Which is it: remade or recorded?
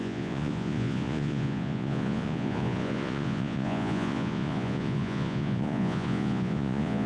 remade